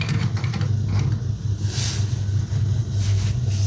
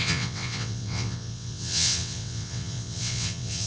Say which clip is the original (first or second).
first